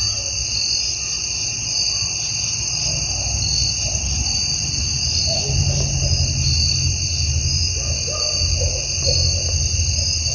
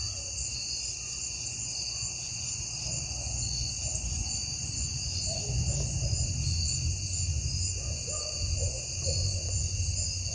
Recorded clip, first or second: first